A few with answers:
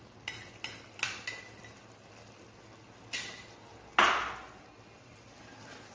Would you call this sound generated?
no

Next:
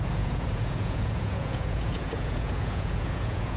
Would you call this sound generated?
yes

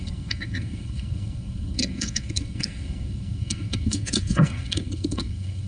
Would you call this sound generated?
yes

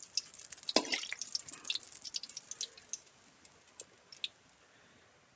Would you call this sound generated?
no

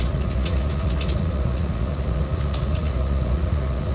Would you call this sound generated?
yes